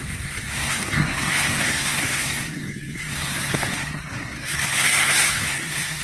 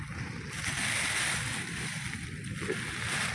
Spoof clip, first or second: first